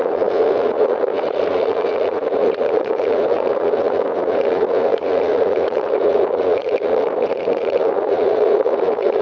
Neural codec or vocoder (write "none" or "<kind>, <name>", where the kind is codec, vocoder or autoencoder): vocoder, Vocos